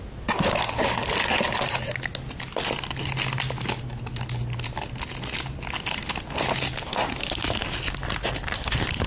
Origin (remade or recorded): recorded